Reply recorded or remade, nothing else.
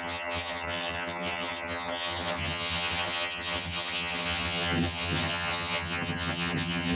remade